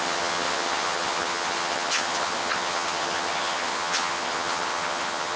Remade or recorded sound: remade